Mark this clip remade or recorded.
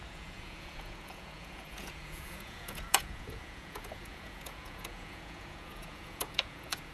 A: remade